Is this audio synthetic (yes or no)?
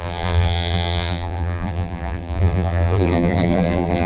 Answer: yes